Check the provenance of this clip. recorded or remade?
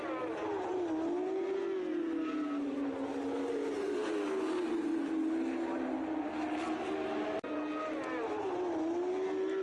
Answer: recorded